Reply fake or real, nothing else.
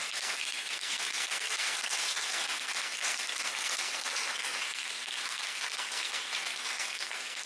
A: fake